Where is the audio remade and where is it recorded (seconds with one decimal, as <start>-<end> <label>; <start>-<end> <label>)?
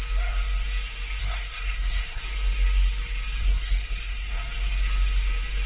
0.0-1.2 recorded; 1.2-2.2 remade; 2.2-3.4 recorded; 3.4-4.4 remade; 4.4-5.7 recorded